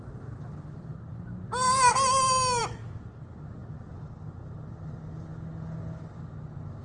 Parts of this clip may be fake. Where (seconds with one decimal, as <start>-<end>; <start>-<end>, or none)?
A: 3.6-4.1